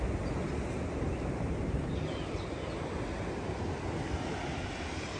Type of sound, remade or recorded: recorded